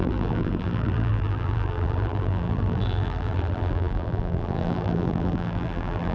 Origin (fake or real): fake